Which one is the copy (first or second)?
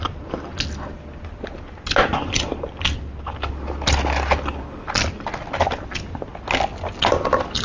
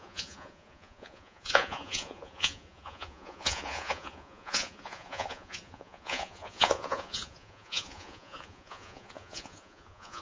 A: second